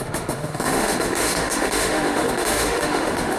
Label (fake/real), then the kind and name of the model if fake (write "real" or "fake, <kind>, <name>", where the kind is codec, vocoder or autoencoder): fake, autoencoder, DAC-VAE